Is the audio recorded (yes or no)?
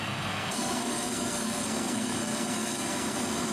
no